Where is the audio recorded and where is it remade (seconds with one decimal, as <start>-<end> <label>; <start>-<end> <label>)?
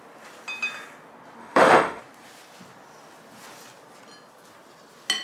0.0-1.4 recorded; 1.4-2.0 remade; 2.0-5.2 recorded